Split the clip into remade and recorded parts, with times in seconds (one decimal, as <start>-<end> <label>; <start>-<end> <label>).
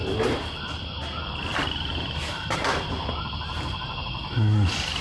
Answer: 0.0-1.5 recorded; 1.5-2.9 remade; 2.9-5.0 recorded